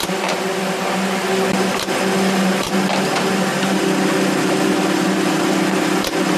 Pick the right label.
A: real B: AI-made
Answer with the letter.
A